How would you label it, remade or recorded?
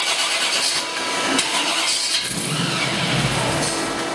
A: recorded